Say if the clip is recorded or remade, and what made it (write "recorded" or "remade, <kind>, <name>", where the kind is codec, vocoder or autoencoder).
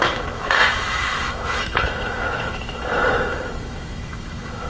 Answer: remade, autoencoder, DAC-VAE